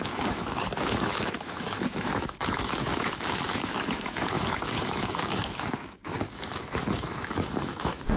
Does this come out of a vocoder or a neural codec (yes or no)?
yes